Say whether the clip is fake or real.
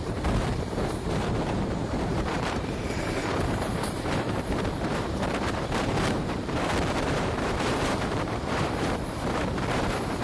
fake